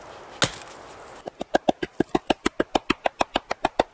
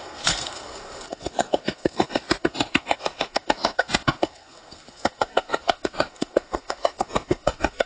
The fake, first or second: second